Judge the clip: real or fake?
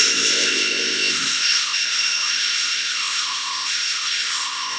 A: fake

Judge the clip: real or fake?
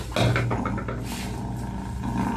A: real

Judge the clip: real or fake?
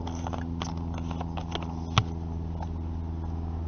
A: real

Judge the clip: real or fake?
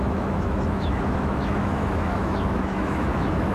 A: fake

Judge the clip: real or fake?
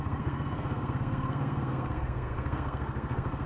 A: fake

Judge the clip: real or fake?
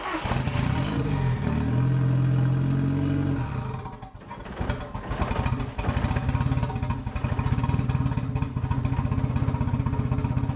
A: real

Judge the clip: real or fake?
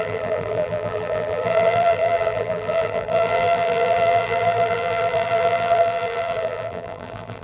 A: fake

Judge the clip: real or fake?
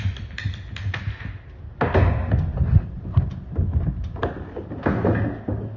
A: real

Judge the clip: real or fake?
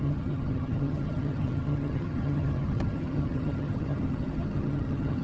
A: fake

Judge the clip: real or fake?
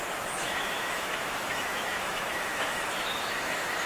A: fake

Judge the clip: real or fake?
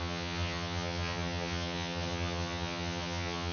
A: fake